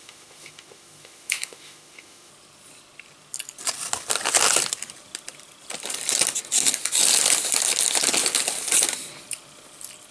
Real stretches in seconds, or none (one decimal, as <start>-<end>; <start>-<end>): 2.3-10.1